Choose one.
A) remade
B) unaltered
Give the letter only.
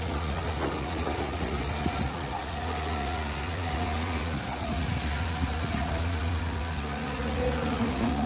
A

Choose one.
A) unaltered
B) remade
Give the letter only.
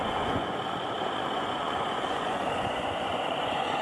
B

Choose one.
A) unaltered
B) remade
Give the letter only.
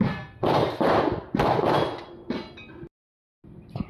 A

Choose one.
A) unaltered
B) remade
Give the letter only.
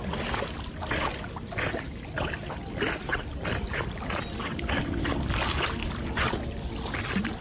A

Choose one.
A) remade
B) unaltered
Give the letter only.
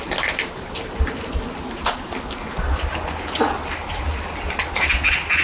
B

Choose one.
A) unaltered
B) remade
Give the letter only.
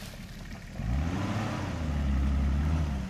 A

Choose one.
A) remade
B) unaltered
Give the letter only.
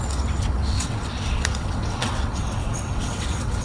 A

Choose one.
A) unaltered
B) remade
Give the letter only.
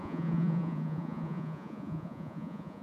B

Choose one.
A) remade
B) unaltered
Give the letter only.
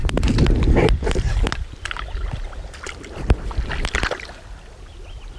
B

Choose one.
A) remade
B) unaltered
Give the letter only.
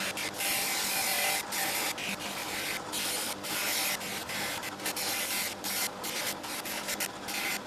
B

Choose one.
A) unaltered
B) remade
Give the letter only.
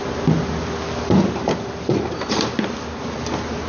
A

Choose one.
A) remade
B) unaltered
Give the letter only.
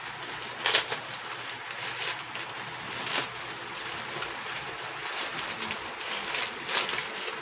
B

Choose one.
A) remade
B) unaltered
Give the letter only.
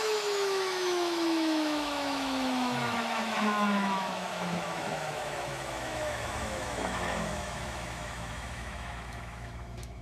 A